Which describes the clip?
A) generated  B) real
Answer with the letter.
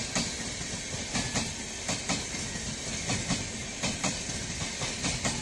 B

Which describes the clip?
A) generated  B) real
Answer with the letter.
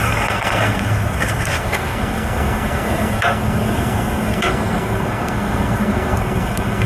A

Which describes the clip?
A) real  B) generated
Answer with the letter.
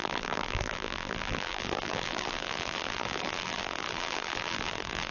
B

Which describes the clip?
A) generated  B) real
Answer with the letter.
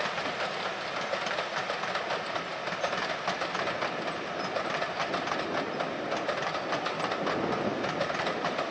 B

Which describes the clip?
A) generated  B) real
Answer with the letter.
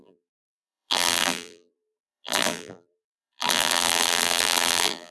A